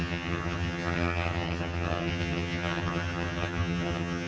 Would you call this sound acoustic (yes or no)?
no